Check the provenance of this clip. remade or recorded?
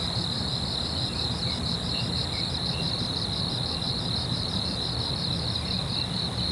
remade